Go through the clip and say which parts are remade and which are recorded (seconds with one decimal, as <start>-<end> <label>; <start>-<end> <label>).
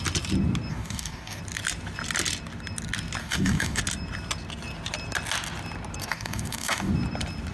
0.0-0.7 recorded; 0.7-1.4 remade; 1.4-3.2 recorded; 3.2-3.8 remade; 3.8-6.0 recorded; 6.0-6.9 remade; 6.9-7.5 recorded